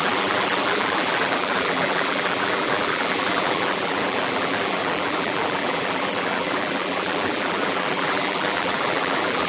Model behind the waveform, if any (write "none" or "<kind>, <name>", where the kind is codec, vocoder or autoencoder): vocoder, BigVGAN v2